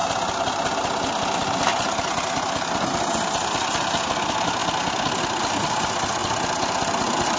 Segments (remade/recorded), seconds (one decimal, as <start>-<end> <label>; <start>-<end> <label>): 0.0-7.4 recorded